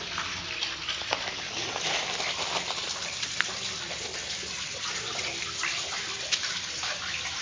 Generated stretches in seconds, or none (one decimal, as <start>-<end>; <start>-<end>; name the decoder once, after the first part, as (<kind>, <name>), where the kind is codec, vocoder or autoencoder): none